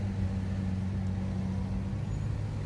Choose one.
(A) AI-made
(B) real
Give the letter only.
B